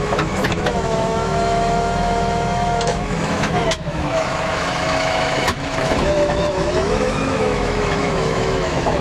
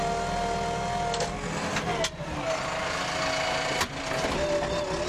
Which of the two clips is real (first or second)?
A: second